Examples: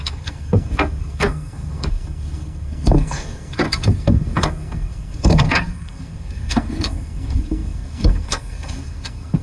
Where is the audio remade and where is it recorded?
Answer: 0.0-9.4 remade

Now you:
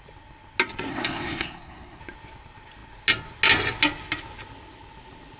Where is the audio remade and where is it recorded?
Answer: 0.0-0.9 recorded; 0.9-2.0 remade; 2.0-5.4 recorded

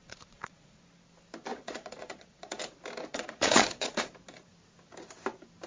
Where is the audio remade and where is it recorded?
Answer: 0.0-0.8 remade; 0.8-1.5 recorded; 1.5-2.6 remade; 2.6-3.1 recorded; 3.1-4.1 remade; 4.1-5.7 recorded

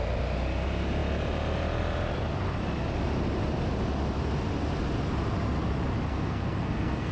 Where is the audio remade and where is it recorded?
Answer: 0.0-6.1 recorded; 6.1-7.1 remade

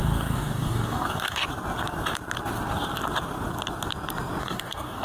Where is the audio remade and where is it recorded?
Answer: 0.0-1.4 remade; 1.4-4.4 recorded; 4.4-5.0 remade

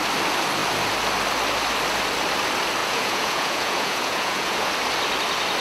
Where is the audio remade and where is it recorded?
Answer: 0.0-2.8 recorded; 2.8-4.7 remade; 4.7-5.6 recorded